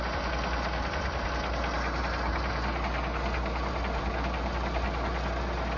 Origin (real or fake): real